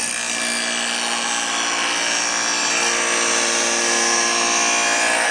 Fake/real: real